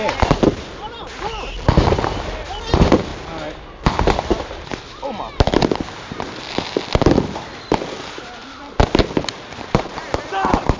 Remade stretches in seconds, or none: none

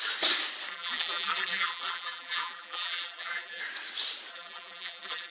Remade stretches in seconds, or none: 0.7-3.6 (vocoder, BigVGAN v2); 4.3-5.3

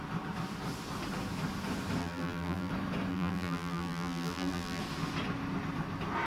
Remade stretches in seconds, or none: 2.0-2.7 (vocoder, BigVGAN v2); 3.1-4.8

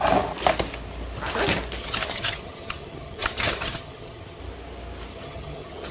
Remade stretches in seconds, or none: 1.8-4.4 (vocoder, HiFi-GAN); 5.1-5.9

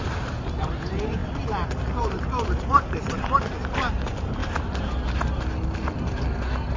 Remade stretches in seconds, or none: 0.0-1.2 (vocoder, BigVGAN v2); 2.0-4.4

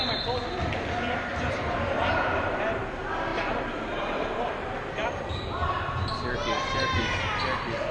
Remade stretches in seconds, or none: 1.3-2.8 (vocoder, BigVGAN v2); 3.3-4.5

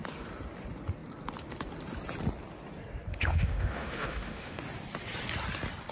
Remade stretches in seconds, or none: 3.1-4.6 (autoencoder, DAC-VAE)